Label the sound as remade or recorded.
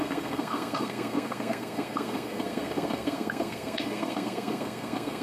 remade